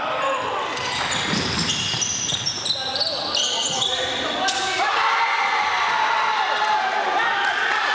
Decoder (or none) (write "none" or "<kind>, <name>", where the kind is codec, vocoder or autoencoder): none